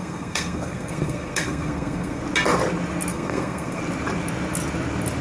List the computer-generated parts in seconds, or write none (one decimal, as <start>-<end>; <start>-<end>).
0.0-2.2; 3.1-3.8